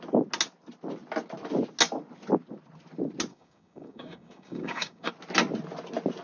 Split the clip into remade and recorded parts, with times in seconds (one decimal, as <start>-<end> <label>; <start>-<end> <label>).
0.0-3.3 recorded; 3.3-5.1 remade; 5.1-6.2 recorded